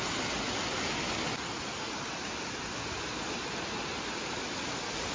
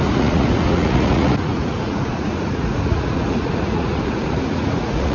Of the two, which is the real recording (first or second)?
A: first